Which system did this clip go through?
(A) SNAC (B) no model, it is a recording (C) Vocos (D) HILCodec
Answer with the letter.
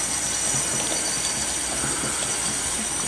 B